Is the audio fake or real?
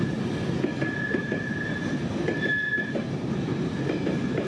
real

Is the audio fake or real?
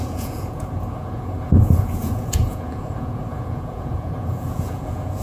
fake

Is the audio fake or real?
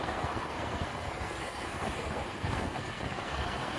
fake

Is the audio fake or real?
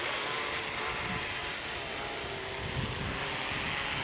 real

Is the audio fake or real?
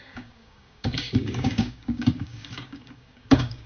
fake